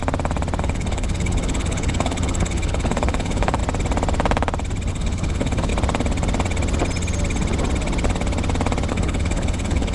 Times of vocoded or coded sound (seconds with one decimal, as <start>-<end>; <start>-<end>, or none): 0.6-3.6; 4.9-5.7; 8.9-9.9